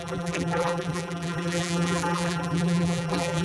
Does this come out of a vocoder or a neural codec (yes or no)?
yes